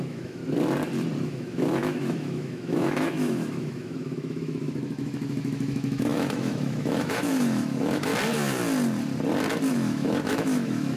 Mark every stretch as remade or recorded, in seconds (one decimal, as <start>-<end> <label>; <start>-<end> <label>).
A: 0.0-0.4 remade; 0.4-1.2 recorded; 1.2-8.1 remade; 8.1-9.7 recorded; 9.7-11.0 remade